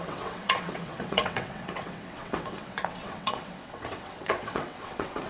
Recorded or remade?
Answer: remade